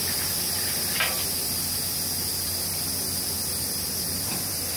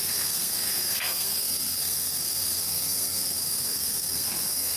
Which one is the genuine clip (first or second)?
first